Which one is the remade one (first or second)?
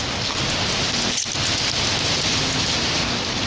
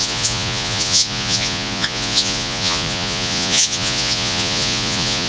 second